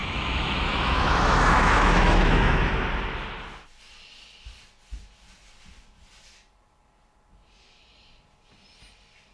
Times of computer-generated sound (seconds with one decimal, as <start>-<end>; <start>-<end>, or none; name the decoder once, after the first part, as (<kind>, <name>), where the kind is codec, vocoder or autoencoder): 0.0-2.7 (autoencoder, DAC-VAE)